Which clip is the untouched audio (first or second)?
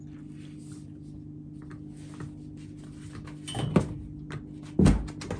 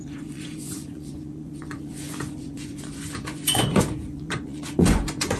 first